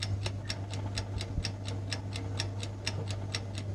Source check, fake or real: real